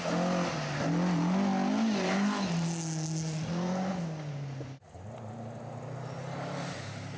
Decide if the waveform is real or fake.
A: real